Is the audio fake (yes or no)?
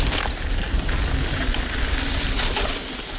no